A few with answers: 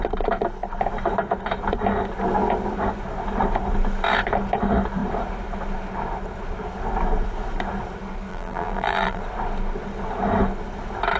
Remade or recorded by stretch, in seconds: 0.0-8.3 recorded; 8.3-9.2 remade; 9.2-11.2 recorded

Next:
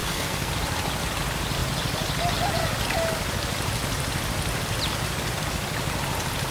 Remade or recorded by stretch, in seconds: 0.0-0.5 remade; 0.5-6.5 recorded